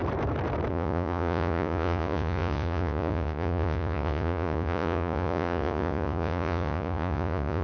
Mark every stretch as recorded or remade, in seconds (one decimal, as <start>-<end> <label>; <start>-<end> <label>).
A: 0.0-0.7 recorded; 0.7-7.6 remade